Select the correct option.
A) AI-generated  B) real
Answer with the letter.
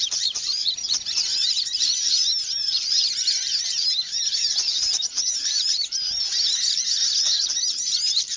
A